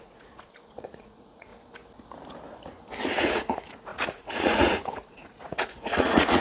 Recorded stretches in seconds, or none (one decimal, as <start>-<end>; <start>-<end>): 1.5-3.0